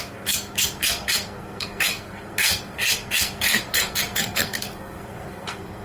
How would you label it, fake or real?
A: fake